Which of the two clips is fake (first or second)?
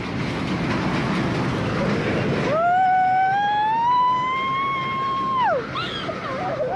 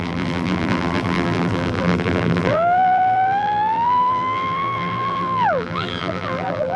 second